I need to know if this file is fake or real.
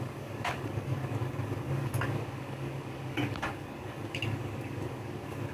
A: fake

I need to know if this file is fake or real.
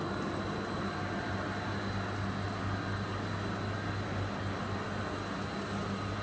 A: real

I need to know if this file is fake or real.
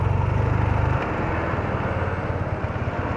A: real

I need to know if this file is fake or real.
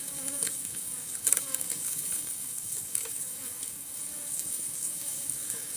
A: fake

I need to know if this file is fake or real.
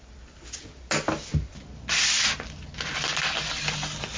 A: real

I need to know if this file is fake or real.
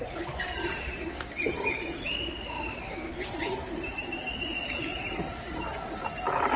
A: real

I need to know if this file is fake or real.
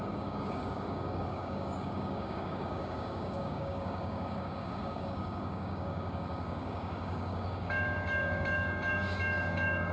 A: fake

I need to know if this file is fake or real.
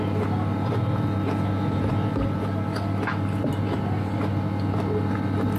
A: real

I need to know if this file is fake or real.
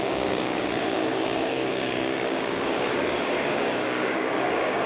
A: fake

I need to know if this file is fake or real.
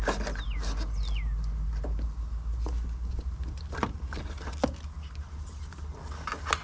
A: real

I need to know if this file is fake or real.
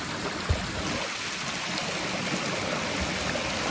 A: real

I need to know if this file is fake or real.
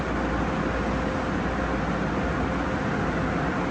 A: real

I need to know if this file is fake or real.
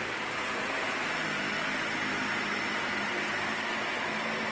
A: real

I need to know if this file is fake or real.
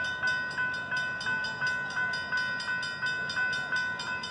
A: real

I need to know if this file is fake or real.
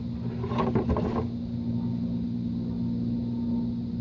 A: real